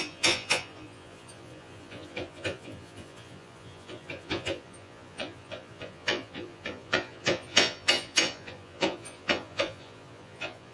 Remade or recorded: remade